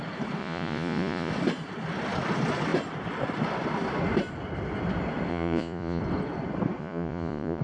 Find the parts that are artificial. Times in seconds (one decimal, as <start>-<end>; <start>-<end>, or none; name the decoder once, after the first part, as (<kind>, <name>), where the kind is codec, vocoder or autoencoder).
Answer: 0.4-1.3 (vocoder, Vocos); 5.3-6.0; 6.8-7.6